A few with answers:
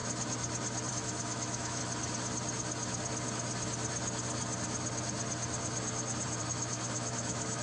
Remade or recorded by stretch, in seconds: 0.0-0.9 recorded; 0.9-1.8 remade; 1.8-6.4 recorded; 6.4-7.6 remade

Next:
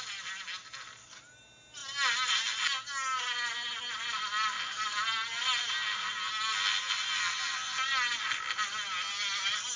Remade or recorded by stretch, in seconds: 0.0-9.8 recorded

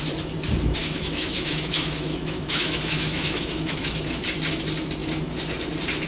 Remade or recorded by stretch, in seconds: 0.0-0.8 recorded; 0.8-4.2 remade; 4.2-6.1 recorded